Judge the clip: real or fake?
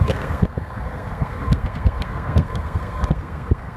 fake